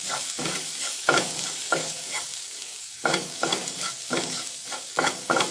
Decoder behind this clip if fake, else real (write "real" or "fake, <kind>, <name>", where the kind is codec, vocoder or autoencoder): fake, codec, DAC